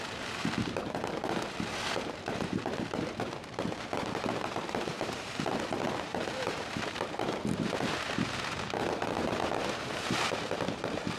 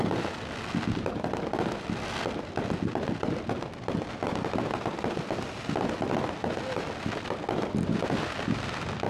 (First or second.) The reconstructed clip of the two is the first